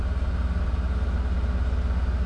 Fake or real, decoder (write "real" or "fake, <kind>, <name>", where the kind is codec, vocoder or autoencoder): real